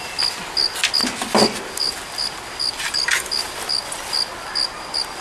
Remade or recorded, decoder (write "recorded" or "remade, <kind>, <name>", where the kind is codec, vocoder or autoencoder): recorded